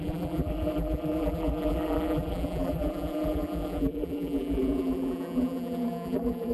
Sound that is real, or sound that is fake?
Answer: fake